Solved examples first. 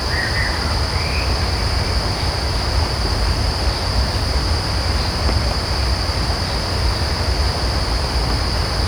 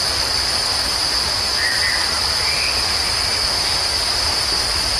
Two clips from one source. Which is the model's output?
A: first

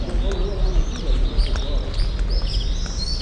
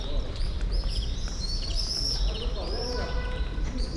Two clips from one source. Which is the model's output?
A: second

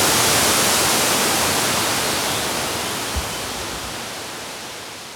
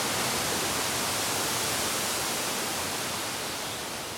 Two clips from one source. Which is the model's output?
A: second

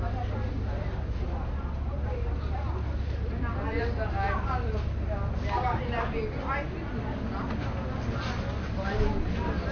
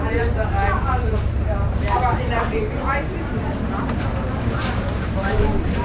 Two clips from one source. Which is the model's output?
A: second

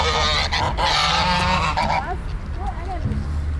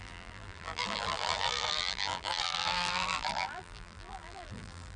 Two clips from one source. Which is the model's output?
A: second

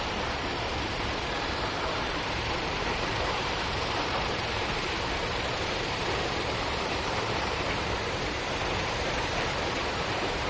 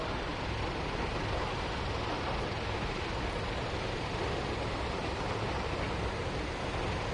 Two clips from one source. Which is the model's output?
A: first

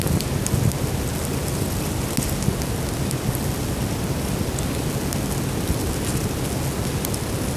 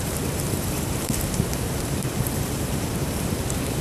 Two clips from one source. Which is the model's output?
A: second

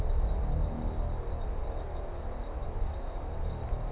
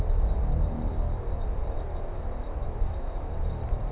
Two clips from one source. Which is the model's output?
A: second